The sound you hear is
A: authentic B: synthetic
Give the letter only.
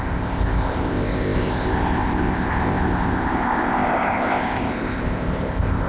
B